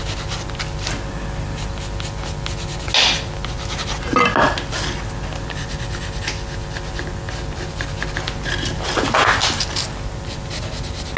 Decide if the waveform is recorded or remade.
recorded